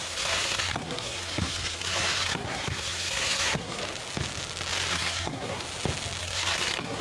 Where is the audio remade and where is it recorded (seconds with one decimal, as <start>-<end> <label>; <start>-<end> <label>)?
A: 0.0-3.8 remade; 3.8-4.9 recorded; 4.9-5.6 remade; 5.6-6.2 recorded; 6.2-7.0 remade

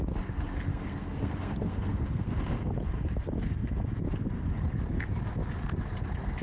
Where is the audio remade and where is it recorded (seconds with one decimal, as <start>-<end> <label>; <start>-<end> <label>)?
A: 0.0-0.7 recorded; 0.7-2.7 remade; 2.7-6.4 recorded

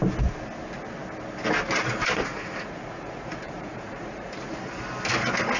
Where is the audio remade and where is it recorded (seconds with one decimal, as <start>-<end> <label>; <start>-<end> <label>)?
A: 0.0-2.3 recorded; 2.3-4.6 remade; 4.6-5.6 recorded

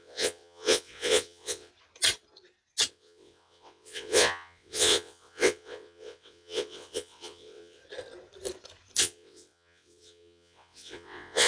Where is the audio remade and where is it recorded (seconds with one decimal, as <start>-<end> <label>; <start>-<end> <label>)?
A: 0.0-1.7 remade; 1.7-2.9 recorded; 2.9-7.8 remade; 7.8-9.0 recorded; 9.0-11.5 remade

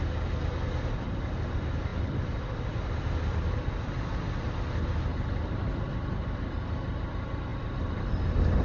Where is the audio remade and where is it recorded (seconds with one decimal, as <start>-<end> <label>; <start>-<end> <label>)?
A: 0.0-8.6 recorded